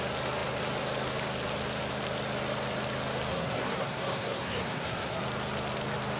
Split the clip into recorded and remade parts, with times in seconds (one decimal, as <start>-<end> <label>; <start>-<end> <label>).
0.0-3.3 recorded; 3.3-5.2 remade; 5.2-6.2 recorded